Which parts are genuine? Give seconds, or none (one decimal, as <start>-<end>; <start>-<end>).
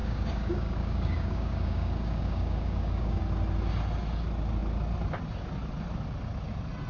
3.2-6.9